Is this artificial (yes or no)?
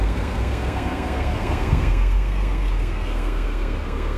yes